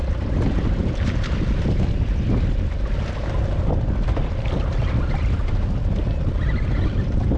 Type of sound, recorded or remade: recorded